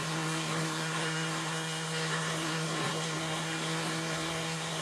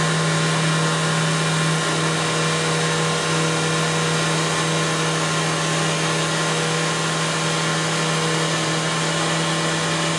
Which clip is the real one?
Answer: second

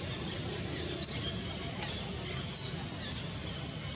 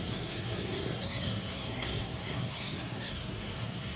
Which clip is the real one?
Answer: first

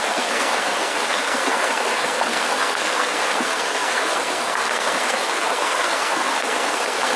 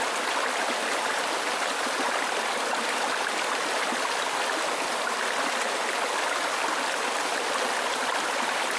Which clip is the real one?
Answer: second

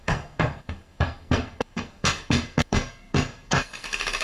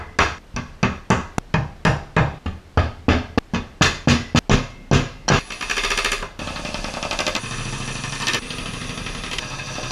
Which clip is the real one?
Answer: second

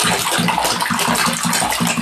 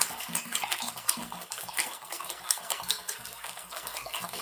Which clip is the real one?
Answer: first